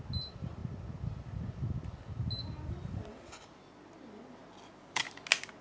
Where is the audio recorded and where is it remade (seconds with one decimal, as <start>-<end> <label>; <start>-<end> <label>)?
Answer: 0.0-4.4 recorded; 4.4-5.0 remade; 5.0-5.6 recorded